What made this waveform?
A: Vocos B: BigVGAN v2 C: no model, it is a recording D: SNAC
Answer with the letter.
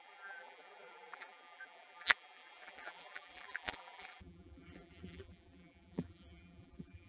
B